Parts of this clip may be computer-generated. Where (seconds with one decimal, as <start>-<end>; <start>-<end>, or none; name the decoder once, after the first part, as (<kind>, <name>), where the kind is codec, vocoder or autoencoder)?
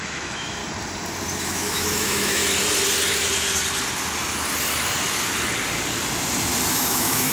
0.0-0.6 (autoencoder, DAC-VAE); 1.4-2.4; 6.7-7.3